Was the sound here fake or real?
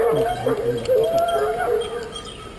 real